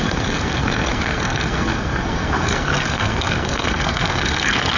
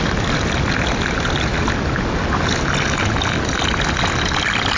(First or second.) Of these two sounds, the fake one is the first